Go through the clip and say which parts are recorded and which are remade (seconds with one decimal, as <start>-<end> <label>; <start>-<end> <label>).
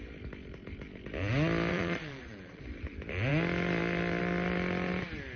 0.0-1.7 recorded; 1.7-2.6 remade; 2.6-5.4 recorded